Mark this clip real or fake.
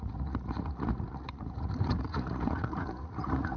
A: fake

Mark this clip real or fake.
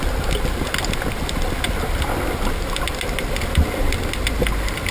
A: real